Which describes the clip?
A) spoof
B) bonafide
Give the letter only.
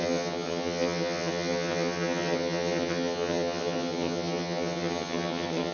A